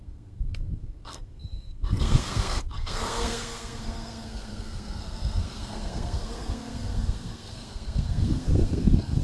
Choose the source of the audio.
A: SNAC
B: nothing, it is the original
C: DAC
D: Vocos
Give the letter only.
A